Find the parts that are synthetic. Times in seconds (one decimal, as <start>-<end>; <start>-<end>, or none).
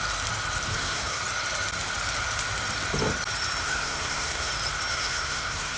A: 0.7-1.2; 3.6-4.5; 4.9-5.8